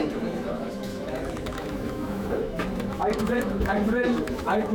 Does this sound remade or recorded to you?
remade